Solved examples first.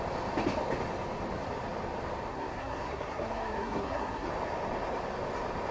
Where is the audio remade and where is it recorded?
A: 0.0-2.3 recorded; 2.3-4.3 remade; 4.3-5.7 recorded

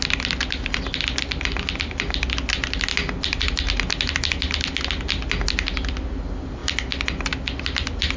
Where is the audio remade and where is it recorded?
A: 0.0-8.2 recorded

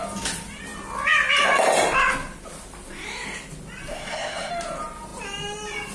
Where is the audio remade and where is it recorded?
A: 0.0-3.9 recorded; 3.9-4.5 remade; 4.5-5.9 recorded

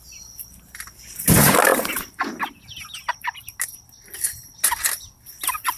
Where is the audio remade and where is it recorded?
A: 0.0-5.8 recorded

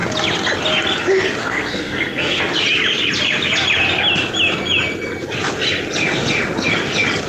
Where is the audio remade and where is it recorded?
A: 0.0-1.4 recorded; 1.4-2.4 remade; 2.4-7.3 recorded

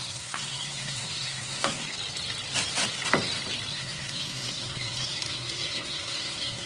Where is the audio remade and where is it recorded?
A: 0.0-1.9 remade; 1.9-3.7 recorded; 3.7-6.7 remade

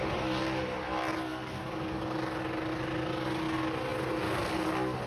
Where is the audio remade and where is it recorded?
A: 0.0-5.1 recorded